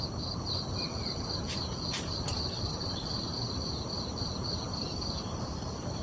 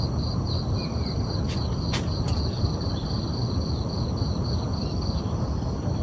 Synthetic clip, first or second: first